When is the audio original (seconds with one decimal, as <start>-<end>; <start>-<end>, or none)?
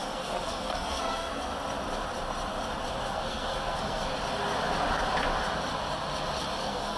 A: 1.5-3.0; 4.1-6.6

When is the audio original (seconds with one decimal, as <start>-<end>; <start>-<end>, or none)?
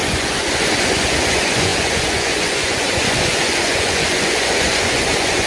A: none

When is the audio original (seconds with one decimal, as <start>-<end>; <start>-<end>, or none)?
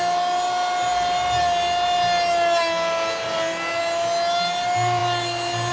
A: 0.0-5.7